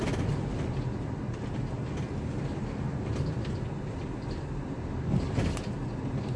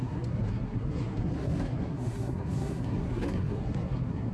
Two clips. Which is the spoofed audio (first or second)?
second